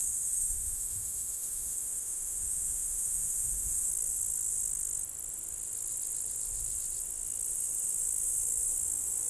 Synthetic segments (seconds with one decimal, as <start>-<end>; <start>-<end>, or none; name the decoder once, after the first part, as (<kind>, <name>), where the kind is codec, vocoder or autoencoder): 0.0-3.9 (autoencoder, DAC-VAE)